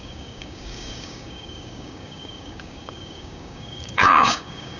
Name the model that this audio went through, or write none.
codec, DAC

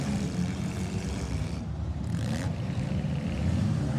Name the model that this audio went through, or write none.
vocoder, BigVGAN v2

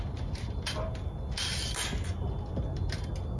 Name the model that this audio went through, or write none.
none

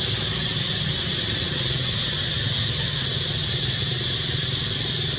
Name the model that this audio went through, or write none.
none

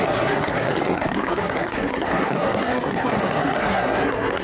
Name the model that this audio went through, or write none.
codec, SNAC